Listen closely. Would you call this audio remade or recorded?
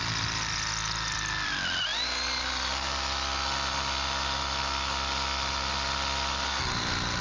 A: recorded